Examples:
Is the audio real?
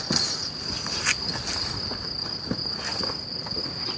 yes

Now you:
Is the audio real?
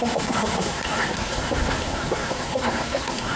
no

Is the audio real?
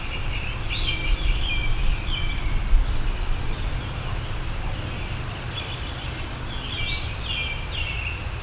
yes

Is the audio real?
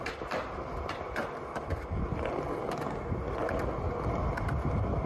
yes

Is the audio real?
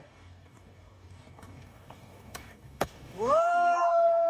no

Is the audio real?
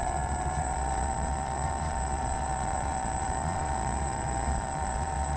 no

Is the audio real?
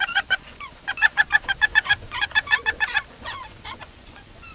no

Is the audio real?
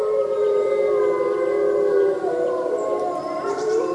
no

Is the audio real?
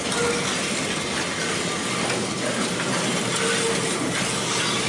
yes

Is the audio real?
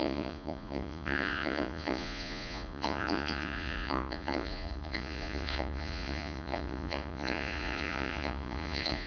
no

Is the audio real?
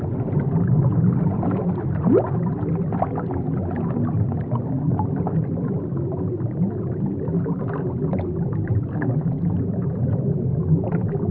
yes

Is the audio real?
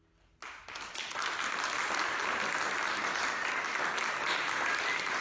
yes